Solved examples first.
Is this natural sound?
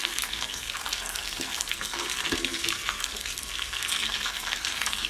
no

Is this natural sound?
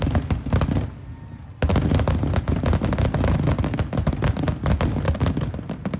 yes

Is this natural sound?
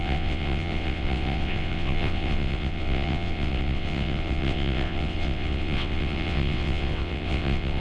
no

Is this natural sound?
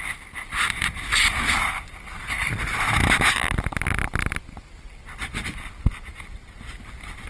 yes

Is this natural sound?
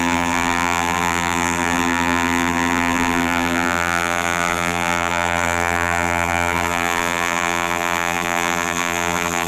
no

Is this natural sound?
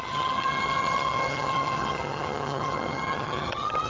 no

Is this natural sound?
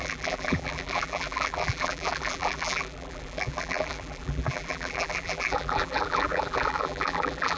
no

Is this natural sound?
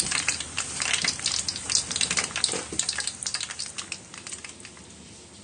yes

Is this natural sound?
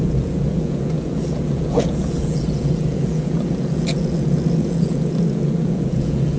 no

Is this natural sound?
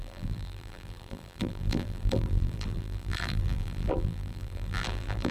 no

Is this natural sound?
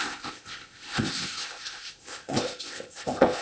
no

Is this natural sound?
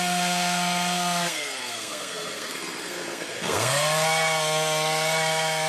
no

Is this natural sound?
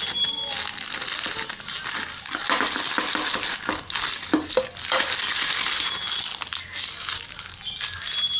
yes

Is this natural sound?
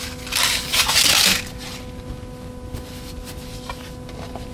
yes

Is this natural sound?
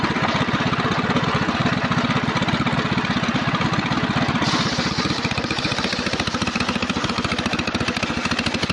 yes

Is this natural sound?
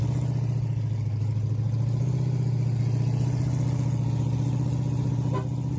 yes